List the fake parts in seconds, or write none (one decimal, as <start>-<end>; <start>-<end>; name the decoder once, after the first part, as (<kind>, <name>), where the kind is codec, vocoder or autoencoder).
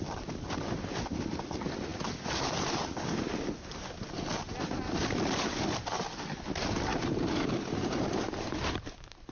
none